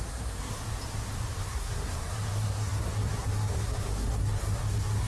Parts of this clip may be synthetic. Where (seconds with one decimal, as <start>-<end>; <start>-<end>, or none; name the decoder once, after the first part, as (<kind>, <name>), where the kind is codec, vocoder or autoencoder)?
0.0-0.6 (codec, SNAC); 1.4-5.1

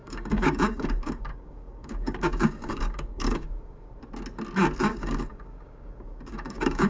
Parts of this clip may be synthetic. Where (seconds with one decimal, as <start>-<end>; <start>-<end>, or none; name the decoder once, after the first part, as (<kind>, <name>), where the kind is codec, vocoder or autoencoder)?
0.0-3.9 (codec, DAC); 4.9-6.9

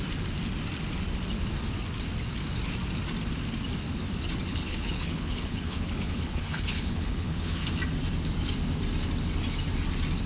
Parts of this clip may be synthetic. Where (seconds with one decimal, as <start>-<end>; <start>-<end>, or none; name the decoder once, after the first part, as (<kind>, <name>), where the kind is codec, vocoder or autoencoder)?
4.5-7.7 (codec, HILCodec)

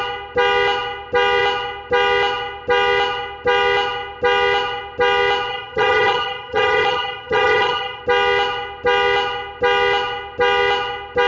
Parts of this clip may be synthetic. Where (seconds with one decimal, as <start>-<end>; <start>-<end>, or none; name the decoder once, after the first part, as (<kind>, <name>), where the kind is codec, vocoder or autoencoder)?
5.5-8.0 (vocoder, HiFi-GAN)